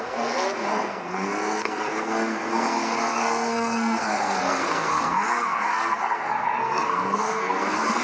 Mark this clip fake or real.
fake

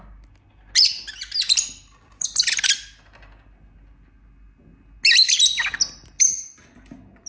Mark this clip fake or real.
real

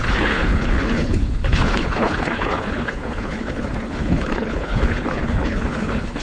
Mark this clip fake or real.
fake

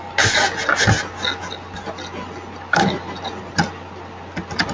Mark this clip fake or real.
real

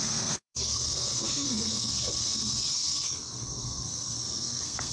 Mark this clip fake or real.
fake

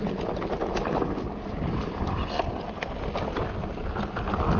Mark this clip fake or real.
real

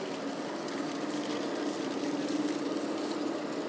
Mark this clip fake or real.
real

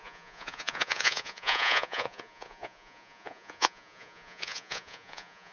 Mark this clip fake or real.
fake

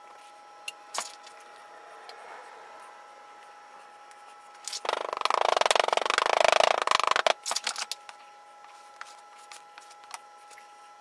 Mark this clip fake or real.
real